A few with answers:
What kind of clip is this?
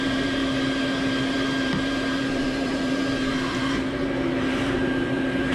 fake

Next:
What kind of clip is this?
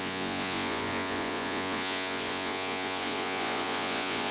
fake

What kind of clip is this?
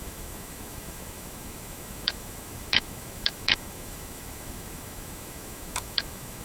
fake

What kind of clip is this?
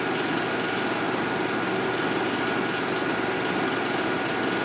real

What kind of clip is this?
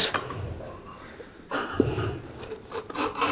fake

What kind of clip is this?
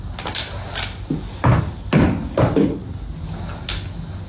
real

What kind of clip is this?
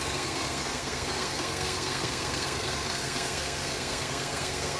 fake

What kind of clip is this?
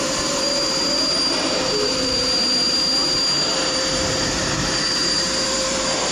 fake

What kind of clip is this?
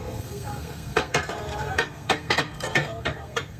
fake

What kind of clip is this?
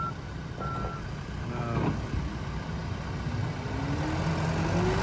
real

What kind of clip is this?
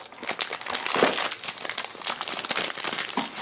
real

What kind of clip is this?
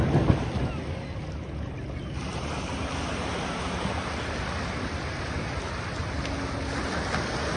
real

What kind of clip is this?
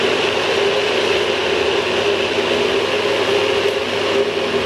real